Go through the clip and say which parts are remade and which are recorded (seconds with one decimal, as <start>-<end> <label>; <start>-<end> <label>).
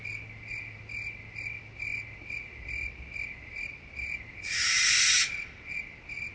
0.0-6.3 recorded